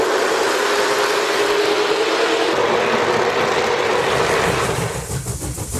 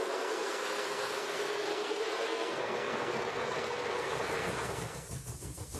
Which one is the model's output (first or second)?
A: second